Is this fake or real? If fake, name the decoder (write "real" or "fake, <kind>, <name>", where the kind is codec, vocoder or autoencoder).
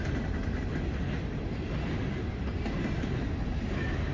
real